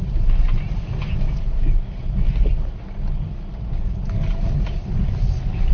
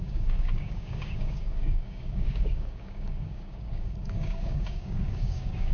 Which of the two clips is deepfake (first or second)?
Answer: second